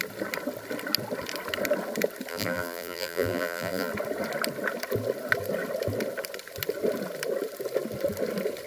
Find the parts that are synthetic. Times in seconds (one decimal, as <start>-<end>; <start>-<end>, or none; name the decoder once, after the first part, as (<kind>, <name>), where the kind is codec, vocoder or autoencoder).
2.3-3.9 (vocoder, BigVGAN v2)

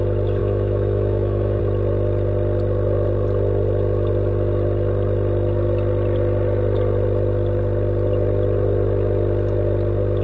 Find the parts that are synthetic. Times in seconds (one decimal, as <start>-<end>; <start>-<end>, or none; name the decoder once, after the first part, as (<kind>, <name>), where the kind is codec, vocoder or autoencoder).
0.4-1.6 (autoencoder, DAC-VAE)

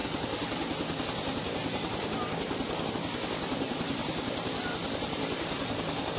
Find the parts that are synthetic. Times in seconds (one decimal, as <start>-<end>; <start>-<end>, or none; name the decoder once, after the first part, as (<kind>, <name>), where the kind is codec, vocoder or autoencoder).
0.0-6.2 (vocoder, BigVGAN v2)

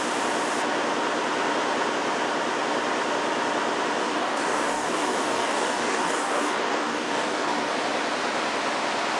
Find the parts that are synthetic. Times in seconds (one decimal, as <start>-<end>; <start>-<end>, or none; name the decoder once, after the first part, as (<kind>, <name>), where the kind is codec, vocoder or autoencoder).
4.0-7.7 (codec, DAC)

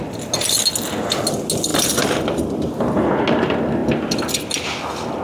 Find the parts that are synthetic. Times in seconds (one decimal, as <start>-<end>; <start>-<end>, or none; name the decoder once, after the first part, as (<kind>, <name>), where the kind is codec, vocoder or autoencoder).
1.7-2.8 (vocoder, BigVGAN v2)

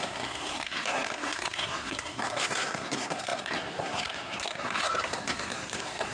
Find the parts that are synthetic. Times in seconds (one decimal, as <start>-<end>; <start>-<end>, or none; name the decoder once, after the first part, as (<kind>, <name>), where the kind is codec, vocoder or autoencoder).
0.0-6.1 (codec, SNAC)